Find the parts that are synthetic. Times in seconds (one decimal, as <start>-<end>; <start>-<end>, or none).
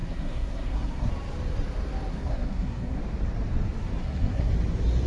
0.0-1.1; 2.1-3.0; 4.0-4.5